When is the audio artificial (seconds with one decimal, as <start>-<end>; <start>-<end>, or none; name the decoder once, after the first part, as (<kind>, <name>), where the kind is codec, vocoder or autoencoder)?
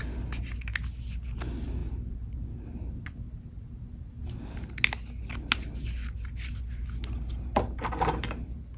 none